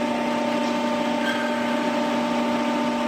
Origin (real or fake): real